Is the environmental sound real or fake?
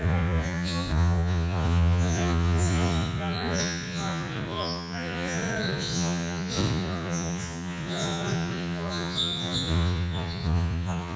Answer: fake